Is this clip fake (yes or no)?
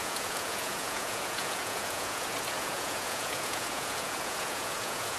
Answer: yes